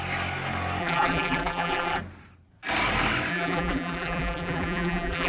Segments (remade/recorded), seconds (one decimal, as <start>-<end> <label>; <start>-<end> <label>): 0.0-0.8 recorded; 0.8-2.0 remade; 2.0-3.3 recorded; 3.3-5.3 remade